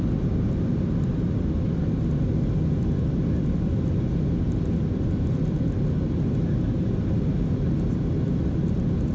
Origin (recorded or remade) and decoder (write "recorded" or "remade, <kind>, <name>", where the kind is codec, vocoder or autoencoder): recorded